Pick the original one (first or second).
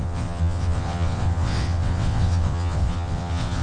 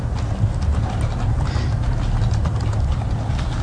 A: second